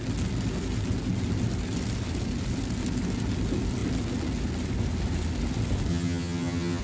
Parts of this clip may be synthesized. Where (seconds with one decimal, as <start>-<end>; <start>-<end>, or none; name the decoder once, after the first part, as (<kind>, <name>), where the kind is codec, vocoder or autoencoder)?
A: 5.9-6.8 (vocoder, HiFi-GAN)